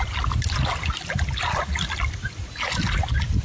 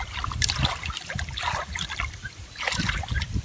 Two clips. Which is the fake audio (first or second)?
second